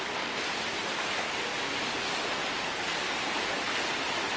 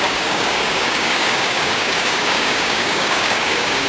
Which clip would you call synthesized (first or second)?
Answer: second